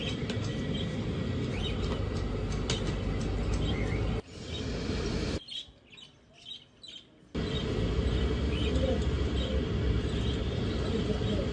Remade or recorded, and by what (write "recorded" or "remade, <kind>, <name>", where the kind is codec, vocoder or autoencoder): recorded